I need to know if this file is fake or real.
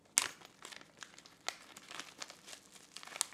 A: real